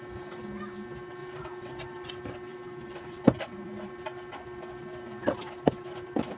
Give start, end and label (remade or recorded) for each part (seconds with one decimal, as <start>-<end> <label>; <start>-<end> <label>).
0.0-1.2 recorded; 1.2-1.7 remade; 1.7-2.5 recorded; 2.5-3.9 remade; 3.9-6.4 recorded